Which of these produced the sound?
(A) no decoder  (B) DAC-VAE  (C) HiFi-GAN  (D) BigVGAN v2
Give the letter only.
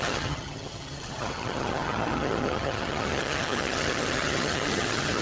C